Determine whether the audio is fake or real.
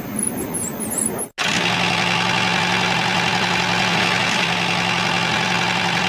real